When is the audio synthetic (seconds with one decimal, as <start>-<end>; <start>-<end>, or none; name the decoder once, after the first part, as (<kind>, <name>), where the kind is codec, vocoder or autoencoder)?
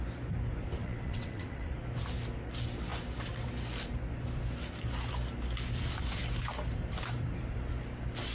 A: 0.8-1.7 (vocoder, WaveNeXt)